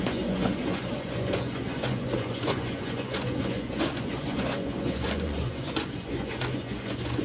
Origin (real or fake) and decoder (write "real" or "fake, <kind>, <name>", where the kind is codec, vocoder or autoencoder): fake, vocoder, Vocos